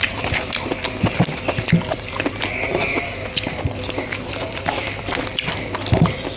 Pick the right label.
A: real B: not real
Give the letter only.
A